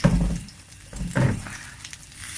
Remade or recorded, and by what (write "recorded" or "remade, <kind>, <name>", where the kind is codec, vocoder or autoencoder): remade, vocoder, BigVGAN v2